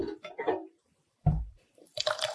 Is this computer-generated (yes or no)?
yes